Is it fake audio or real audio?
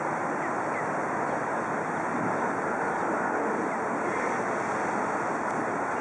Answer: real